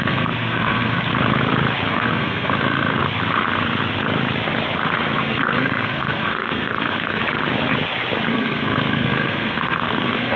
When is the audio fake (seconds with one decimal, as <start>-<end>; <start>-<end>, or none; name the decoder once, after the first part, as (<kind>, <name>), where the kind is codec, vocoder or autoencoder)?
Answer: 0.0-1.1 (codec, SNAC); 1.9-3.0; 5.2-7.2; 8.3-10.4